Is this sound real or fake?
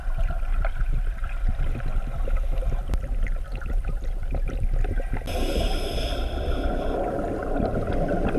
real